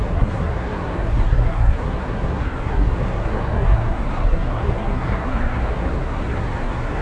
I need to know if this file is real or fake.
fake